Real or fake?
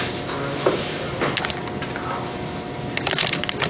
real